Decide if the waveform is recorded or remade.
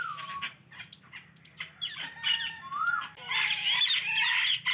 recorded